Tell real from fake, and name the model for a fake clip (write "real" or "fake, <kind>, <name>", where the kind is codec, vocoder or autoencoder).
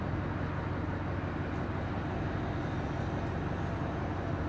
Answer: real